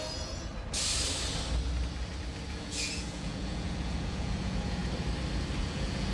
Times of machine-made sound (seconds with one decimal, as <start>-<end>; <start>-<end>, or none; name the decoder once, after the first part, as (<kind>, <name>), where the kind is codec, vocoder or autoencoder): 0.0-0.5 (vocoder, Vocos); 2.5-4.8; 5.6-6.1